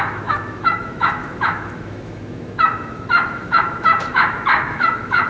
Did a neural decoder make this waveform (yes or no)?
yes